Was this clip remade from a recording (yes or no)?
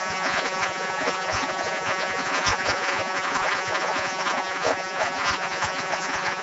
yes